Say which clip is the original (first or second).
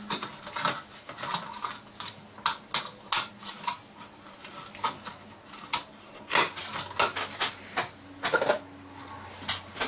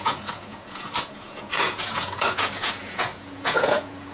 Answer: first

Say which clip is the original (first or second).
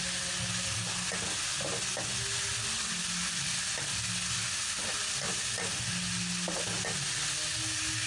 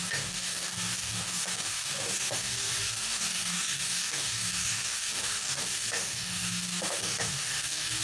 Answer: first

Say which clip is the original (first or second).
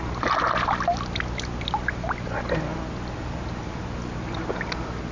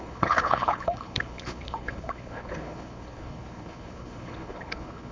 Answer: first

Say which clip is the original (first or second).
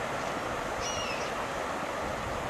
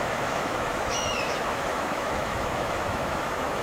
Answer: first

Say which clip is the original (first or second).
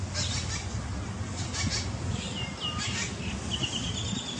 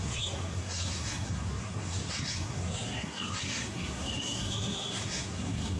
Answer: first